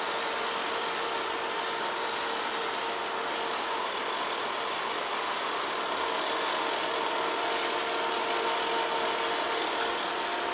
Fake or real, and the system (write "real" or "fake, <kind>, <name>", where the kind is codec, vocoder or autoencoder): real